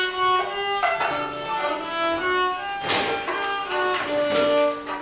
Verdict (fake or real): real